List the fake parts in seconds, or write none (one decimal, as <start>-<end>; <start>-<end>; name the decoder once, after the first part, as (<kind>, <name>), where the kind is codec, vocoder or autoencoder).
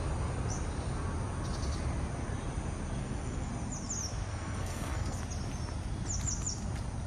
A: 3.0-3.5 (codec, SNAC); 4.3-5.2